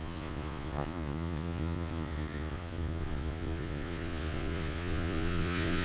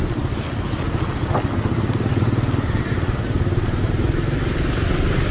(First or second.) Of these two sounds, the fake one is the first